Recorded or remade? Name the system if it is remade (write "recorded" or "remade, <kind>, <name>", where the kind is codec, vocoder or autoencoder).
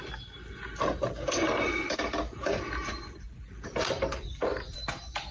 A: recorded